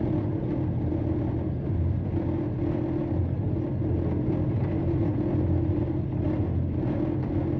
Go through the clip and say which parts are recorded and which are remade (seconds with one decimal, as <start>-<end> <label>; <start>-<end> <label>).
0.0-0.9 recorded; 0.9-2.0 remade; 2.0-7.6 recorded